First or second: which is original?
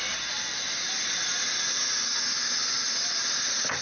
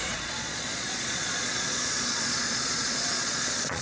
first